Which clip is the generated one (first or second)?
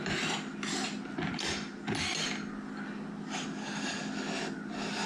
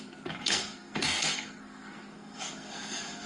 second